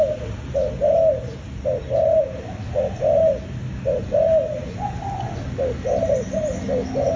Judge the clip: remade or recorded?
recorded